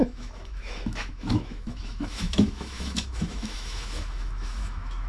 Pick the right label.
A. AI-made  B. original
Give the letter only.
A